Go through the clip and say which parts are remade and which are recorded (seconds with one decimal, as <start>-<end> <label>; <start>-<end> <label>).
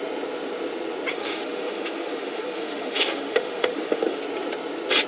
0.0-1.1 recorded; 1.1-4.2 remade; 4.2-5.1 recorded